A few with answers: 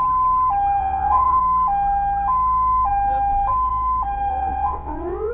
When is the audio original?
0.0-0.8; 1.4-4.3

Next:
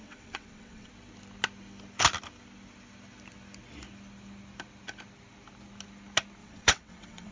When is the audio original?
0.9-6.4